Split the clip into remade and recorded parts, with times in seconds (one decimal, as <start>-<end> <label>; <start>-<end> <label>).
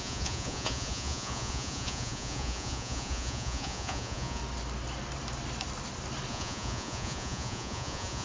0.0-4.4 remade; 4.4-6.3 recorded; 6.3-8.2 remade